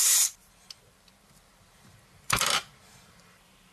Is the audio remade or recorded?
remade